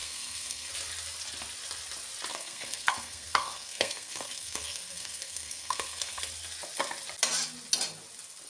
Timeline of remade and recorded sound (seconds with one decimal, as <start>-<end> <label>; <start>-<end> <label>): 0.0-0.7 remade; 0.7-2.3 recorded; 2.3-6.2 remade; 6.2-8.5 recorded